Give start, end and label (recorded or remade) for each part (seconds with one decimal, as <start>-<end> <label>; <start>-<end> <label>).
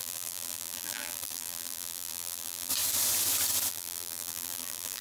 0.0-2.7 remade; 2.7-3.7 recorded; 3.7-5.0 remade